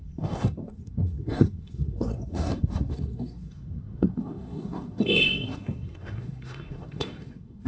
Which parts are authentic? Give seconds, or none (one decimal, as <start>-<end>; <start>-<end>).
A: none